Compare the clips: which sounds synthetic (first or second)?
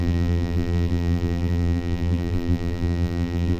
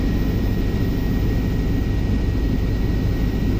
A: first